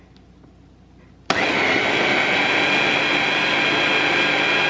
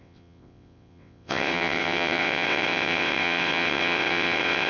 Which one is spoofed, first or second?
second